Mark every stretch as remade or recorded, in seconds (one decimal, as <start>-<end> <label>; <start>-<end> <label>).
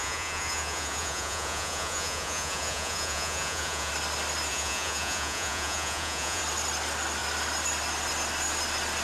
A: 0.0-3.9 remade; 3.9-4.5 recorded; 4.5-6.4 remade; 6.4-9.0 recorded